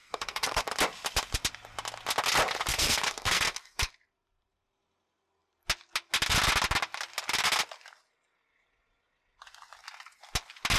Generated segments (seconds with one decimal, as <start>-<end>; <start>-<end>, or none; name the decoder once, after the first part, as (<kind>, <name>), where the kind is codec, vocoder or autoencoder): 0.0-0.6 (codec, SNAC); 2.7-3.9